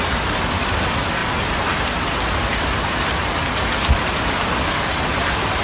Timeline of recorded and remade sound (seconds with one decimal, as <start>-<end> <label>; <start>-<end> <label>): 0.0-5.6 recorded